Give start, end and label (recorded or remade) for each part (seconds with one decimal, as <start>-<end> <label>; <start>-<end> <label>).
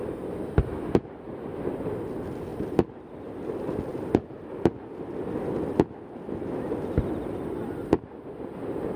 0.0-9.0 recorded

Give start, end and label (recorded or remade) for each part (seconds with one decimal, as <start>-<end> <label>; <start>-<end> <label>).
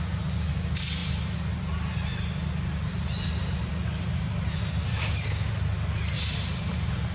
0.0-4.9 recorded; 4.9-5.5 remade; 5.5-7.1 recorded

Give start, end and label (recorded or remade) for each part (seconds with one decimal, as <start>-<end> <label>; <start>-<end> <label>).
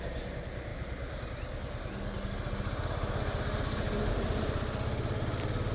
0.0-5.7 recorded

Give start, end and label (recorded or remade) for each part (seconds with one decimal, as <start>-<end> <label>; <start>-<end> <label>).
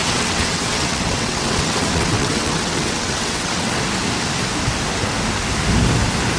0.0-3.8 remade; 3.8-6.4 recorded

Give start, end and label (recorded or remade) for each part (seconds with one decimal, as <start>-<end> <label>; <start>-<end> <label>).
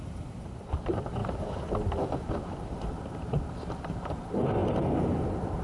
0.0-1.2 remade; 1.2-2.3 recorded; 2.3-4.6 remade; 4.6-5.6 recorded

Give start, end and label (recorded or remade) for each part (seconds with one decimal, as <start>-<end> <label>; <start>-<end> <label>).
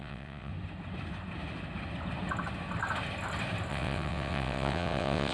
0.0-0.5 remade; 0.5-3.7 recorded; 3.7-5.3 remade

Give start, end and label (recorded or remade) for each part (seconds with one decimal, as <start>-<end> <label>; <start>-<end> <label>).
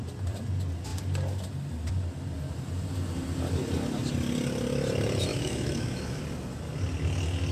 0.0-5.3 recorded; 5.3-6.2 remade; 6.2-7.5 recorded